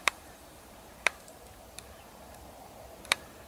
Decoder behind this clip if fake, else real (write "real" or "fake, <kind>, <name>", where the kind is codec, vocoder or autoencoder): fake, vocoder, BigVGAN v2